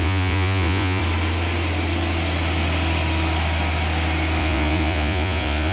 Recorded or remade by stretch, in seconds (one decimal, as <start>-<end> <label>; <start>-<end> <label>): 0.0-1.0 remade; 1.0-4.4 recorded; 4.4-5.7 remade